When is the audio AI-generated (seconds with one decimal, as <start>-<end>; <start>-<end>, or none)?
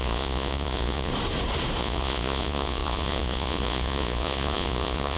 0.0-1.1; 1.8-5.2